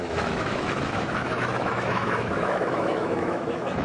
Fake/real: fake